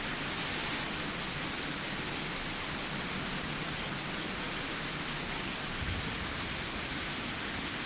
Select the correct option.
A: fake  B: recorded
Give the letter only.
B